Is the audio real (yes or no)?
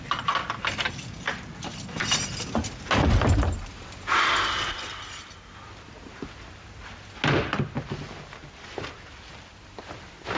yes